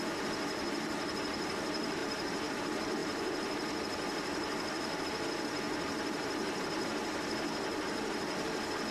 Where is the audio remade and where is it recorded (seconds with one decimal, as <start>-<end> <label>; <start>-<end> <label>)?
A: 0.0-2.0 recorded; 2.0-2.6 remade; 2.6-8.9 recorded